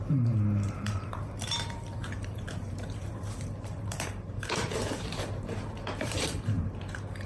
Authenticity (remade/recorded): remade